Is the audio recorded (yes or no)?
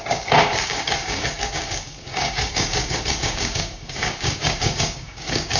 no